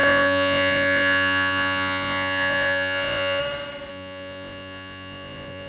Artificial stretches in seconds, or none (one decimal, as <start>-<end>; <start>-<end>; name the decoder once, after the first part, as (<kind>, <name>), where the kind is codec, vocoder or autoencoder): 0.0-3.4 (vocoder, Vocos); 3.9-5.7